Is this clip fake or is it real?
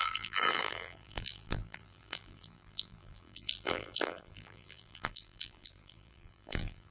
fake